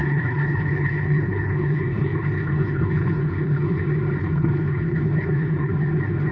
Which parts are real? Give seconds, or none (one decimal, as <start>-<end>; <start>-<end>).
3.8-4.2; 5.7-6.3